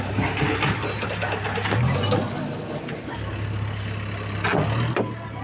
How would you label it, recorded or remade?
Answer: recorded